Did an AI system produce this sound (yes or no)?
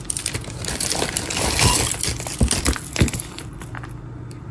no